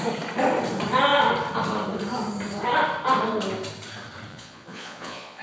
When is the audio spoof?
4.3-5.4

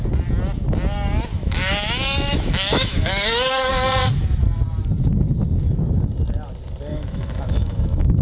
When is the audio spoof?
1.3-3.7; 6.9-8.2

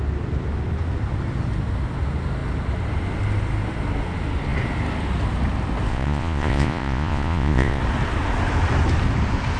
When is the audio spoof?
5.9-7.8

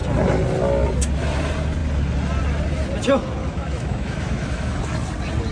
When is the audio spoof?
3.4-4.8